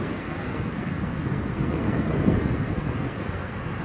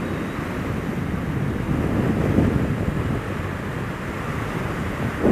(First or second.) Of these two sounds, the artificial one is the first